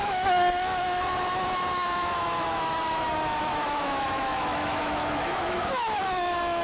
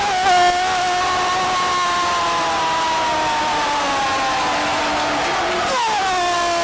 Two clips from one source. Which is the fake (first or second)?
first